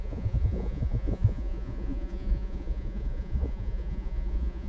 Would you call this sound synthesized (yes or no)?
yes